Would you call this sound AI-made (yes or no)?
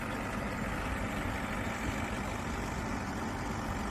no